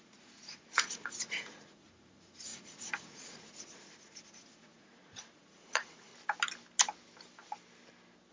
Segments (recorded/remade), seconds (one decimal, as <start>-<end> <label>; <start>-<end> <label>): 0.0-6.1 remade; 6.1-8.3 recorded